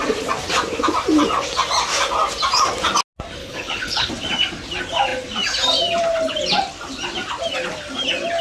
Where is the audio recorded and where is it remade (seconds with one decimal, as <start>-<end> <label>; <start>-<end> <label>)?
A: 0.0-3.4 recorded; 3.4-4.1 remade; 4.1-8.4 recorded